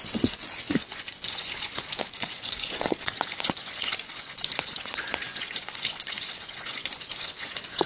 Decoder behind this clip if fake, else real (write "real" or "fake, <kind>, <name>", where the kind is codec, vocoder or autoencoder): fake, vocoder, Vocos